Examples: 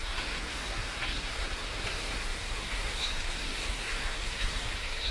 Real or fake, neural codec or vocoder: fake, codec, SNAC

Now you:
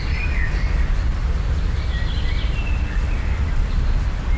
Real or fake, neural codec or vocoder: real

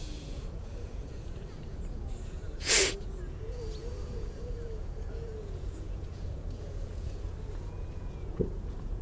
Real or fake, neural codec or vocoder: fake, vocoder, Vocos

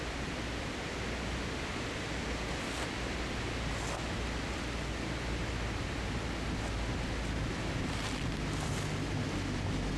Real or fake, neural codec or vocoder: real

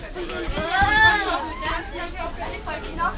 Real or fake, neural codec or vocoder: real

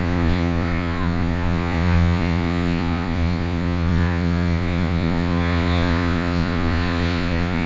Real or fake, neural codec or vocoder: fake, vocoder, Vocos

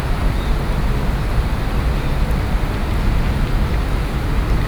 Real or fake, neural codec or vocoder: real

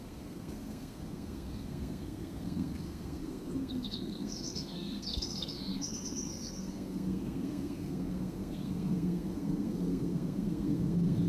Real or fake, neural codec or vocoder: fake, codec, SNAC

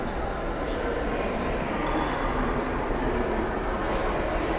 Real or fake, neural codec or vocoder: real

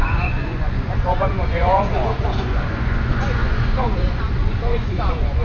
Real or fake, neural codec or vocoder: fake, vocoder, Vocos